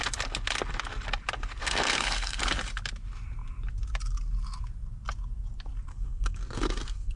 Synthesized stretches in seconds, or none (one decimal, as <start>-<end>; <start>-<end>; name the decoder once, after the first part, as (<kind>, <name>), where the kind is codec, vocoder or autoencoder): 1.6-2.4 (codec, SNAC); 5.9-7.2

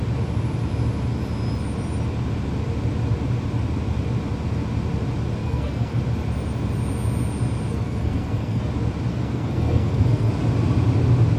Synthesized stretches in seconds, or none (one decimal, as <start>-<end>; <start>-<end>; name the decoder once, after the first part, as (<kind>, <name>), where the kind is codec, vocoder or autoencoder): 5.4-6.0 (codec, SNAC); 7.7-8.6; 9.1-10.3

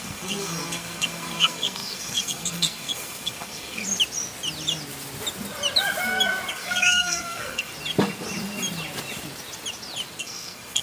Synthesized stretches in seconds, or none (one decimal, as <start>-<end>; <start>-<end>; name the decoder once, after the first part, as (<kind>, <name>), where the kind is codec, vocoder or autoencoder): 0.0-3.8 (codec, SNAC); 6.5-7.7; 10.2-10.8

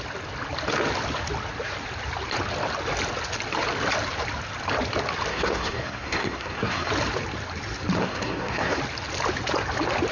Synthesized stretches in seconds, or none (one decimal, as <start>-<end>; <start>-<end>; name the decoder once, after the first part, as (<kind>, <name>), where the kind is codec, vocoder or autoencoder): 5.3-6.9 (codec, SNAC); 8.0-8.8